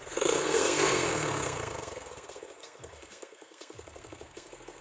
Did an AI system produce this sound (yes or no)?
yes